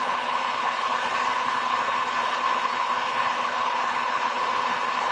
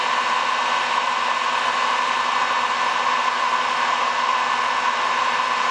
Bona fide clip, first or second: second